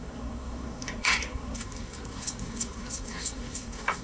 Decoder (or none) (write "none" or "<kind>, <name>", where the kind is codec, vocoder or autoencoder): codec, SNAC